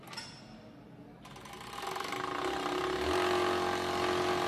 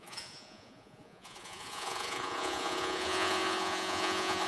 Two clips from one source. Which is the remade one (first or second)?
second